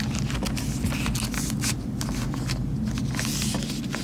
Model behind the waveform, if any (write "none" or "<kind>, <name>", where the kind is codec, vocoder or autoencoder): none